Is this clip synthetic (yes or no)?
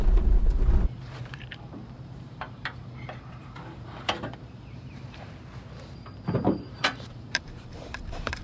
yes